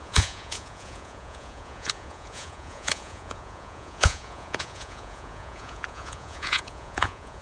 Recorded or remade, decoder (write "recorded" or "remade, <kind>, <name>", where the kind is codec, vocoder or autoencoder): remade, vocoder, Vocos